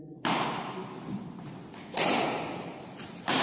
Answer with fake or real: real